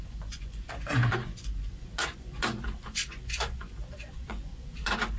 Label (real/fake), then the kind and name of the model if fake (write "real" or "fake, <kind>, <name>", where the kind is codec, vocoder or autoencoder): fake, vocoder, Vocos